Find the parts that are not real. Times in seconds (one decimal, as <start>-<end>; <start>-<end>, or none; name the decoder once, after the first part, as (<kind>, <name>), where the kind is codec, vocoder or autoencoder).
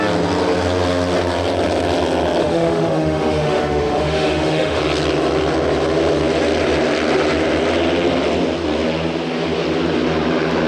2.4-4.8 (autoencoder, DAC-VAE)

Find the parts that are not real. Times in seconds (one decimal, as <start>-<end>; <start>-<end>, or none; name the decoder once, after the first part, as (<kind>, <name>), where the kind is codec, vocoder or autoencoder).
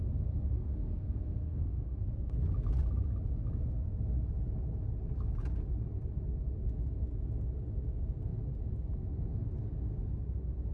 0.6-2.0 (codec, SNAC)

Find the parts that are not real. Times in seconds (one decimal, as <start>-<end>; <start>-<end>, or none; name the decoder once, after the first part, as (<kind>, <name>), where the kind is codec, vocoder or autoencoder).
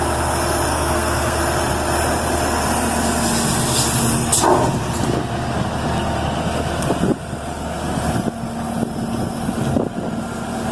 0.7-1.4 (codec, SNAC)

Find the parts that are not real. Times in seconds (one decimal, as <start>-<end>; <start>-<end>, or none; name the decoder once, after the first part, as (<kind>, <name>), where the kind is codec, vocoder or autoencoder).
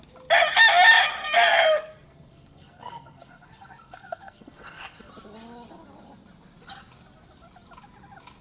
1.2-5.1 (codec, SNAC)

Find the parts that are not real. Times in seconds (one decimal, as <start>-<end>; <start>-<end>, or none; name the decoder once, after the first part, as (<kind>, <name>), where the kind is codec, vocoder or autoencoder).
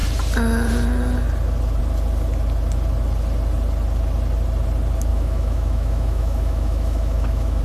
5.1-7.6 (autoencoder, DAC-VAE)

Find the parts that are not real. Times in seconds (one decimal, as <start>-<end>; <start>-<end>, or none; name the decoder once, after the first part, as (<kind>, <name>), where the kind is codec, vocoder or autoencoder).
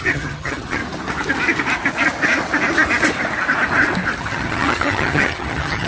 0.0-0.8 (vocoder, HiFi-GAN); 4.2-5.9